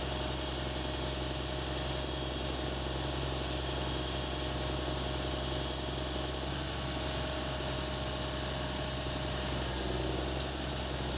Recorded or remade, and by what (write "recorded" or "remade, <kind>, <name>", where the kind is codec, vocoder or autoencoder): recorded